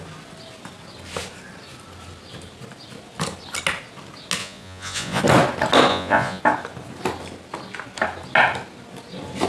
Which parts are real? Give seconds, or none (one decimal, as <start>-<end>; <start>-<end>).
0.0-4.4; 5.2-5.9; 6.4-9.5